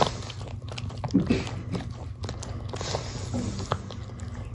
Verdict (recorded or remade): recorded